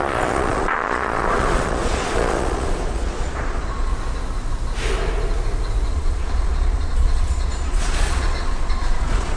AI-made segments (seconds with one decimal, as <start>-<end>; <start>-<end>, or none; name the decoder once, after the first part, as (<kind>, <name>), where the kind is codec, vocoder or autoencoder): 0.0-3.9 (vocoder, Vocos); 5.9-9.4